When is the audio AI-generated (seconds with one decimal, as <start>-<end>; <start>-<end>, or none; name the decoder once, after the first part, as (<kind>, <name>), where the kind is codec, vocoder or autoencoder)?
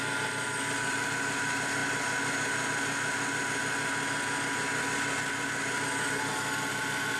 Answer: none